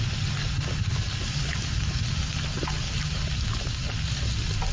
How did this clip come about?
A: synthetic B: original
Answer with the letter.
B